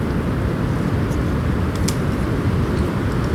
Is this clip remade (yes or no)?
no